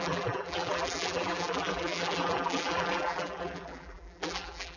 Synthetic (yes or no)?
yes